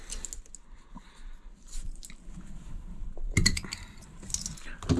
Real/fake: real